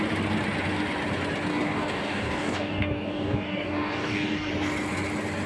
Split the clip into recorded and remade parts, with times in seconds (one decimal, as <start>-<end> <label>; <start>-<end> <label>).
0.0-1.5 recorded; 1.5-4.5 remade; 4.5-5.5 recorded